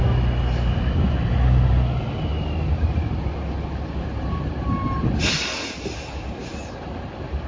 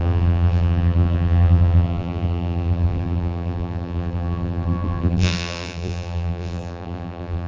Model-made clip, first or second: second